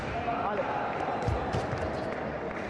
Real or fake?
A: real